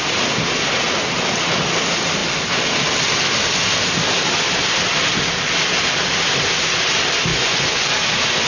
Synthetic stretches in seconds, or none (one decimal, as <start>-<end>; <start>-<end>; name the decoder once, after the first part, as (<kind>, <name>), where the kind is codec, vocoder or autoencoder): 7.3-7.9 (vocoder, Vocos)